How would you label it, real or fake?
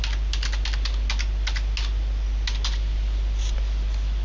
real